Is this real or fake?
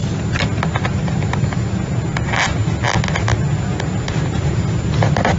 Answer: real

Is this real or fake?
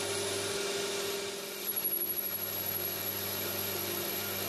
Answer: real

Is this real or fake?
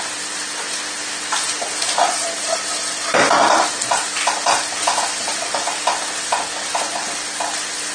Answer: fake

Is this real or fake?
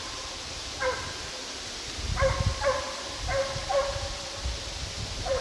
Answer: real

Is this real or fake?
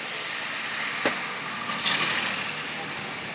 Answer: real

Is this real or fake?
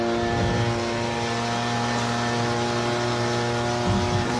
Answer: real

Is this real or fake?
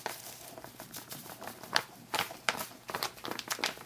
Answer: fake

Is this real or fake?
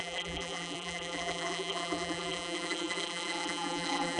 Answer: fake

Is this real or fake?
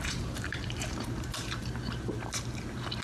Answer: fake